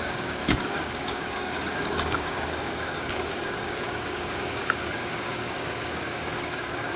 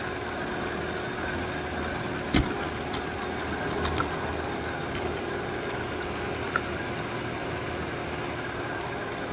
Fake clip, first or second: first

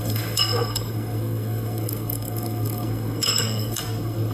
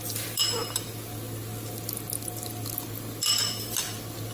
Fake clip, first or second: first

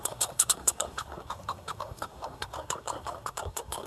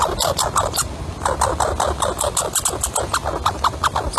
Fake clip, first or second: first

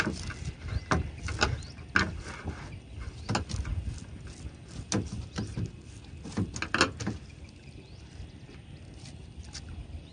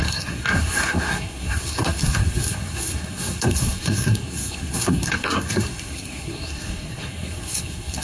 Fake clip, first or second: second